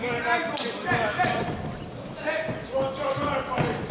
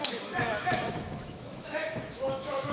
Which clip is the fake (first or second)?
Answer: second